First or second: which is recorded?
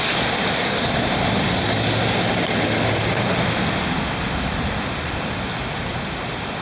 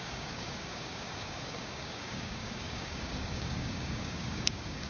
first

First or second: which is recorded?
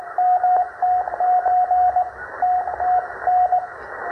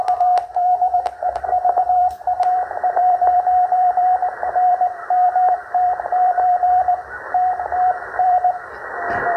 first